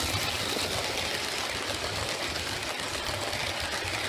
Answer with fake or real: real